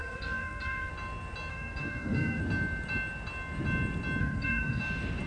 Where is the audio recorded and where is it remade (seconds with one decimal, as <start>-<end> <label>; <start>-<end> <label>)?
0.0-0.9 remade; 0.9-1.5 recorded; 1.5-2.4 remade; 2.4-4.2 recorded; 4.2-4.8 remade; 4.8-5.3 recorded